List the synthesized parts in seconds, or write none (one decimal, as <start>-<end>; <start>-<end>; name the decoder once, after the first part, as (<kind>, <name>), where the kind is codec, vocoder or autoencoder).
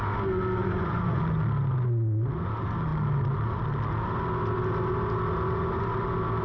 0.6-1.2 (vocoder, Vocos)